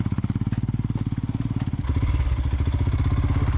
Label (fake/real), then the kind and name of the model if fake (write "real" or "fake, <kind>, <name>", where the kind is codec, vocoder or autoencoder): real